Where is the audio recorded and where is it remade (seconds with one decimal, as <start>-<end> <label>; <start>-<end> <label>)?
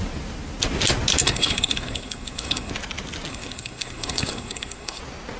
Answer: 0.0-1.2 recorded; 1.2-2.7 remade; 2.7-3.3 recorded; 3.3-5.0 remade; 5.0-5.4 recorded